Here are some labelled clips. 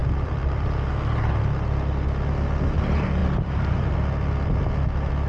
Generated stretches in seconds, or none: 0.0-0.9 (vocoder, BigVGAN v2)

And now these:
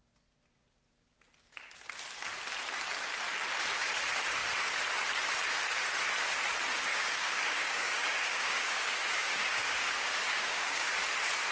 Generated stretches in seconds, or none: 6.9-10.9 (codec, DAC)

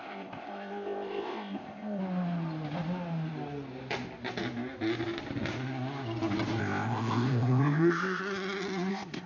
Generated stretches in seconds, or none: 0.0-2.0 (codec, ZipCodec); 6.6-8.2; 8.9-9.3

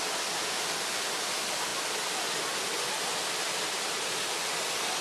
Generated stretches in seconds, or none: none

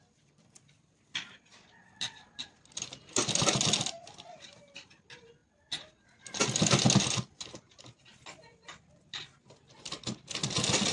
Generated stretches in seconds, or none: 0.0-5.4 (vocoder, BigVGAN v2); 8.8-10.9

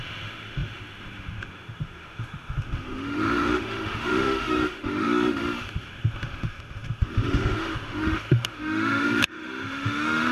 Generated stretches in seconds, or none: 0.0-10.3 (autoencoder, DAC-VAE)

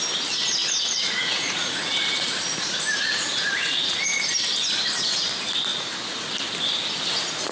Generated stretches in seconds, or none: 0.6-4.0 (vocoder, Vocos); 5.7-6.3